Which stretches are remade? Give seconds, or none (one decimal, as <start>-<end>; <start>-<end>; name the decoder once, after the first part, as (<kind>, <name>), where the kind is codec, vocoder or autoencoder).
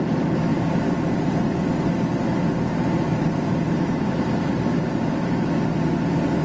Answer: 0.5-1.5 (vocoder, BigVGAN v2); 3.1-4.5